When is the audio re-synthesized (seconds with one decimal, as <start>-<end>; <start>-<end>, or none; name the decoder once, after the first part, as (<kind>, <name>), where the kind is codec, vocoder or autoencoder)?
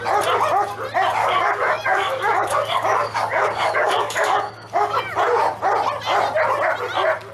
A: 1.2-5.0 (codec, DAC)